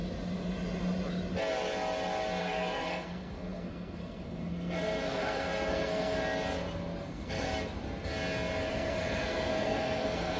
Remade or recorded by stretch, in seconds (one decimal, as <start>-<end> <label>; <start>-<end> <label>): 0.0-2.4 recorded; 2.4-6.2 remade; 6.2-7.0 recorded; 7.0-7.5 remade; 7.5-8.7 recorded; 8.7-10.4 remade